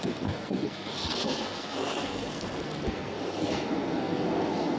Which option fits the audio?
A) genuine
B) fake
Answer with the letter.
B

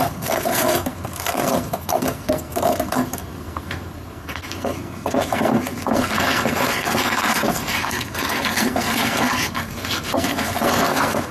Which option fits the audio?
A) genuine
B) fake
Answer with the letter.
B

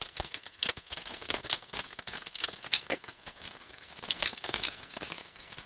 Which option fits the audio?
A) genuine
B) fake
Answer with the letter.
B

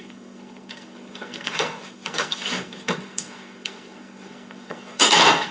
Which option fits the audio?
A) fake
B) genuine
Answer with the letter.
A